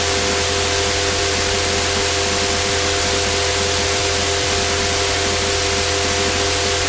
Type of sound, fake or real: real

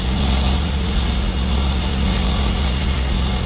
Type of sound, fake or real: fake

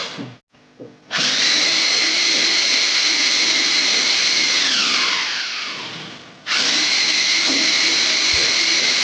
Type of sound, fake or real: real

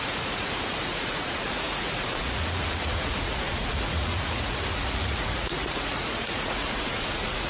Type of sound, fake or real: fake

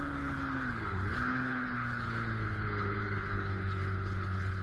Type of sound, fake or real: fake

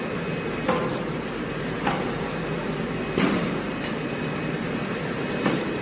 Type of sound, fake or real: real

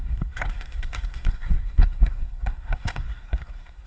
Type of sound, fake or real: fake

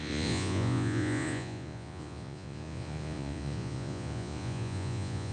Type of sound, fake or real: fake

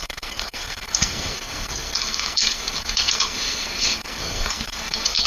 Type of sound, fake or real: fake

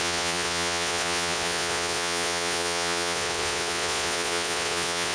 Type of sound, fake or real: fake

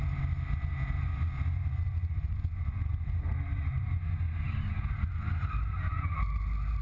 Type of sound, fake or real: real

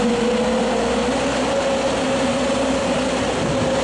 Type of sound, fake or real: real